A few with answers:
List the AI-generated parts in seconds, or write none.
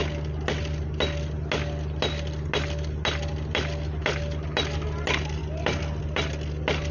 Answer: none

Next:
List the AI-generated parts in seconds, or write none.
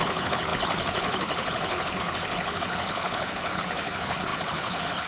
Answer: 0.0-5.1 (codec, HILCodec)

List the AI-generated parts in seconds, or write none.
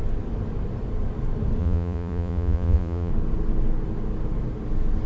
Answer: 1.6-3.1 (vocoder, Vocos)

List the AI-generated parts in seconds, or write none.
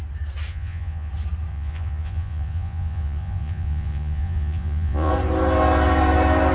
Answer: 0.5-1.1 (vocoder, Vocos); 1.5-5.1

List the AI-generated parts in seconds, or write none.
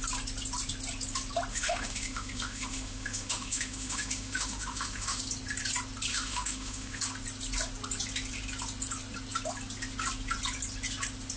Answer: 1.5-5.2 (autoencoder, DAC-VAE); 6.1-7.0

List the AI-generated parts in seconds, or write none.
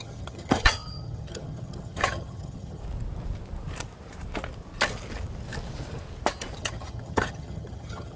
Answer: 0.0-2.8 (vocoder, HiFi-GAN); 6.6-8.2